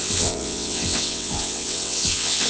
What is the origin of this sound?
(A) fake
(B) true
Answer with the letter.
A